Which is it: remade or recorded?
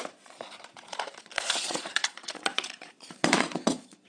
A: remade